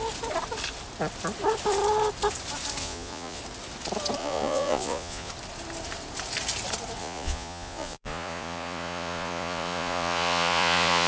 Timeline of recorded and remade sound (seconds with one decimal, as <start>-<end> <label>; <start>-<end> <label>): 0.0-2.8 recorded; 2.8-3.4 remade; 3.4-4.2 recorded; 4.2-5.3 remade; 5.3-7.0 recorded; 7.0-11.1 remade